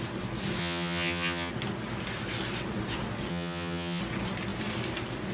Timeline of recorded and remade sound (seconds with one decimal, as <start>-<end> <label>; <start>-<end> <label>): 0.0-0.6 recorded; 0.6-1.5 remade; 1.5-3.3 recorded; 3.3-4.0 remade; 4.0-5.3 recorded